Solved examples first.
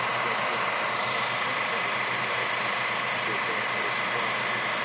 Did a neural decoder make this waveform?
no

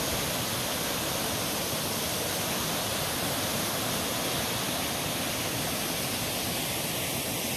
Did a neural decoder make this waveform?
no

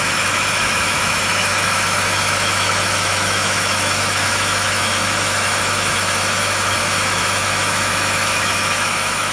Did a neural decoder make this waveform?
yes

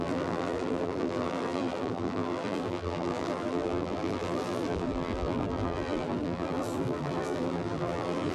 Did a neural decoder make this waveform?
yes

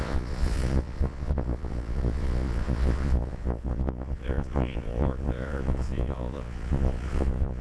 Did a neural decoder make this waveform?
yes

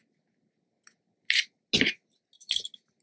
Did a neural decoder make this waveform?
no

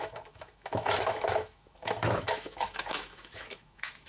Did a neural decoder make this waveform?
yes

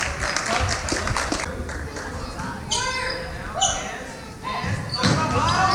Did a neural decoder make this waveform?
no